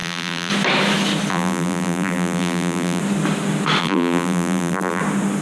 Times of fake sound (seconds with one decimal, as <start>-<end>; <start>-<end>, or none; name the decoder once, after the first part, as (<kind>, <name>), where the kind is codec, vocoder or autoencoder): 0.0-0.5 (vocoder, BigVGAN v2); 1.3-3.0; 3.8-5.0